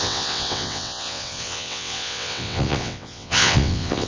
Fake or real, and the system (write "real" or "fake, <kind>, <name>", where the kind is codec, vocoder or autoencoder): fake, vocoder, WaveNeXt